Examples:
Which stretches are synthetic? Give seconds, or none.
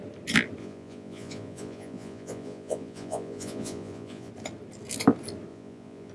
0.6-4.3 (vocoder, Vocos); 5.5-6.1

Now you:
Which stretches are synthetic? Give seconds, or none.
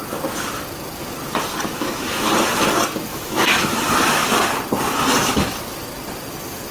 1.7-2.3 (autoencoder, DAC-VAE); 3.1-3.8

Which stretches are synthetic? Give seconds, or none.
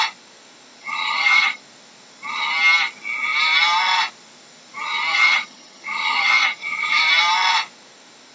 0.8-1.6 (vocoder, HiFi-GAN); 5.1-7.0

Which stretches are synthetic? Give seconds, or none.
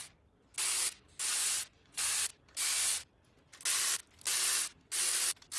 1.4-2.1 (vocoder, Vocos)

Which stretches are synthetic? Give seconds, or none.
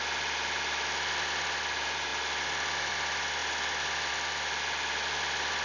none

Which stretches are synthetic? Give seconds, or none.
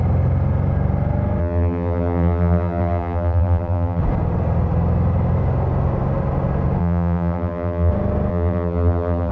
1.4-4.0 (vocoder, BigVGAN v2); 6.8-7.9; 8.3-9.3